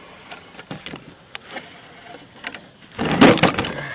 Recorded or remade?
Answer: recorded